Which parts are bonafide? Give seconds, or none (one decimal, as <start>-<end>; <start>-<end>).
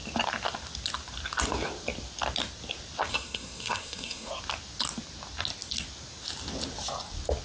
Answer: 0.0-3.1; 4.3-7.4